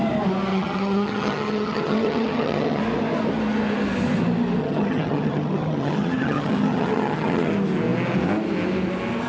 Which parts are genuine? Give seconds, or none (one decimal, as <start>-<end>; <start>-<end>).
0.0-0.5; 2.8-4.6; 7.5-9.3